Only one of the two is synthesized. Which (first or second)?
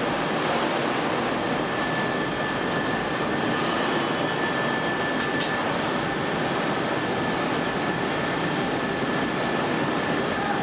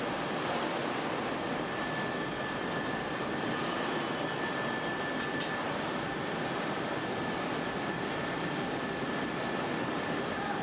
second